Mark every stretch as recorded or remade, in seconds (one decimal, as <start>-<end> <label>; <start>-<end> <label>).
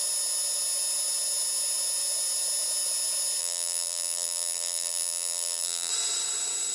0.0-3.4 recorded; 3.4-5.9 remade; 5.9-6.7 recorded